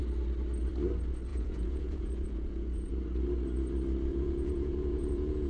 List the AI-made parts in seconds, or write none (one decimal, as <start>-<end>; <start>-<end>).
1.3-2.9; 4.1-5.5